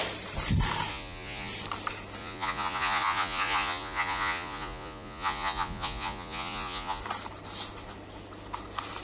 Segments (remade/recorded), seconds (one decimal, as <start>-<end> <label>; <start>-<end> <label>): 0.0-0.9 recorded; 0.9-1.5 remade; 1.5-2.2 recorded; 2.2-7.0 remade; 7.0-9.0 recorded